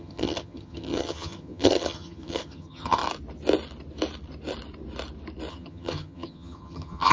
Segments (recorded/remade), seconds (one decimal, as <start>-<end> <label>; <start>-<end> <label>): 0.0-3.0 remade; 3.0-5.5 recorded; 5.5-7.1 remade